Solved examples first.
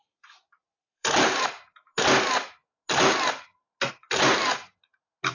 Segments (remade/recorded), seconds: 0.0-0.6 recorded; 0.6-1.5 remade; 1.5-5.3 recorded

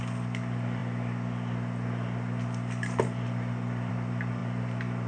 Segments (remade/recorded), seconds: 0.0-5.1 recorded

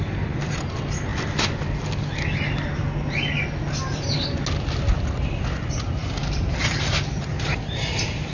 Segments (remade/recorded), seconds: 0.0-6.6 recorded; 6.6-7.7 remade; 7.7-8.3 recorded

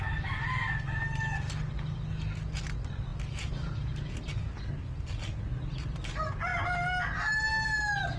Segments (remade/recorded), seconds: 0.0-8.2 recorded

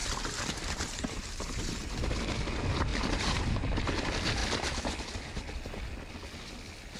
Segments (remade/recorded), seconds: 0.0-2.1 remade; 2.1-2.9 recorded; 2.9-4.0 remade; 4.0-7.0 recorded

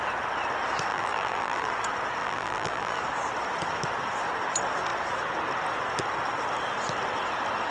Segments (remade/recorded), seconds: 0.0-0.9 recorded; 0.9-1.7 remade; 1.7-2.2 recorded; 2.2-3.0 remade; 3.0-7.7 recorded

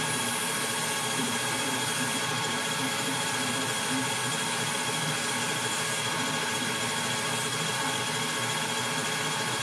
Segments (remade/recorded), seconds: 0.0-0.4 recorded; 0.4-5.1 remade; 5.1-9.6 recorded

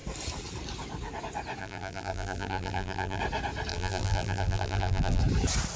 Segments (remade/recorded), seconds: 0.0-1.6 recorded; 1.6-3.2 remade; 3.2-3.7 recorded; 3.7-5.2 remade; 5.2-5.8 recorded